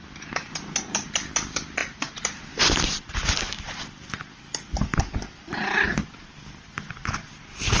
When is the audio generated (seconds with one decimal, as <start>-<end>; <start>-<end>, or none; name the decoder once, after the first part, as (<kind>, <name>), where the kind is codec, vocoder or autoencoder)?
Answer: 1.8-2.4 (vocoder, BigVGAN v2)